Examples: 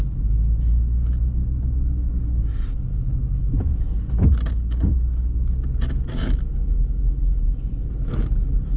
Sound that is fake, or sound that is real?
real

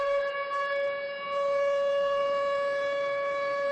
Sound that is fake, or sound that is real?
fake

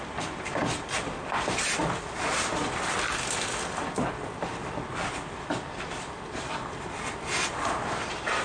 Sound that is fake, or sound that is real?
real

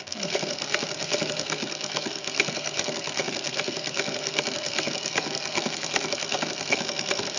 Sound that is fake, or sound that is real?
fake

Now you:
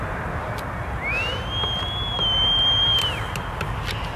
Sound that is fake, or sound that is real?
real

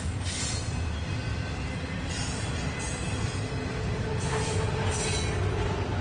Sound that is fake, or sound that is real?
real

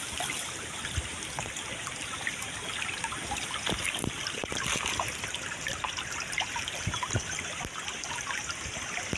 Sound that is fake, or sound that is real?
real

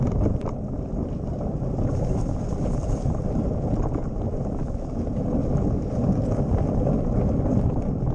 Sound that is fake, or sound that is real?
fake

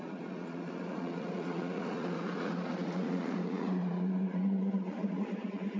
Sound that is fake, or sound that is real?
fake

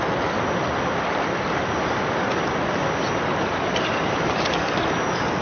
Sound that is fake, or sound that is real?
real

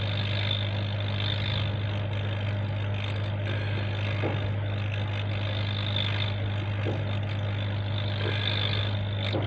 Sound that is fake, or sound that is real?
real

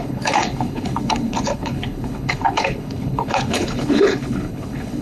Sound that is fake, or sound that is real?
fake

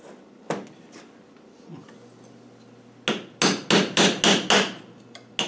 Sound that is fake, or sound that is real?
real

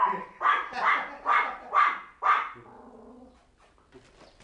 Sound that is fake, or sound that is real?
real